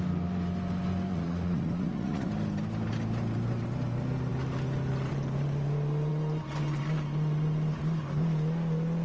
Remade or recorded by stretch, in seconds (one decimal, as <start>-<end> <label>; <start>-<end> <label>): 0.0-1.1 recorded; 1.1-2.3 remade; 2.3-9.0 recorded